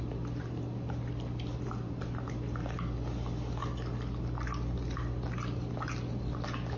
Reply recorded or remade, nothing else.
recorded